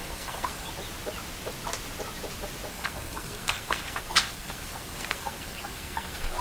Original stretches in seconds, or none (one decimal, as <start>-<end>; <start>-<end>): 0.7-2.7